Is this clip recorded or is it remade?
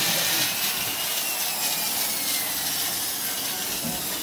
recorded